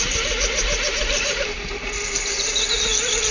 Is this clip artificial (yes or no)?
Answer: no